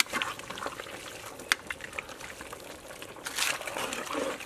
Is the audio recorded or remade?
recorded